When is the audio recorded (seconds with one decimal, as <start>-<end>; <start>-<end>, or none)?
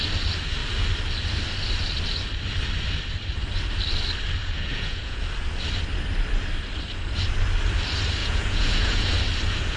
0.0-4.4; 5.2-8.2; 9.1-9.8